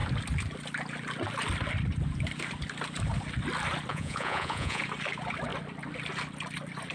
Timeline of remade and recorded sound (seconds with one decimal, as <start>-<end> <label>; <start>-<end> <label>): 0.0-3.9 recorded; 3.9-4.8 remade; 4.8-6.9 recorded